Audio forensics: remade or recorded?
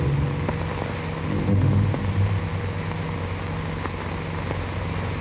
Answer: recorded